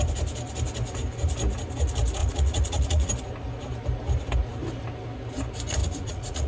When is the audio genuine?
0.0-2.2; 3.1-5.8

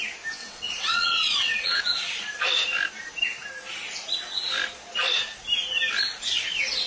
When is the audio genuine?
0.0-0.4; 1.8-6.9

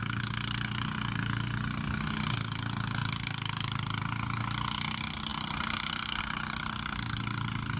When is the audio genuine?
0.0-5.3; 6.2-7.8

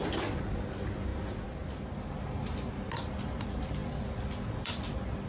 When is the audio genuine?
0.0-5.3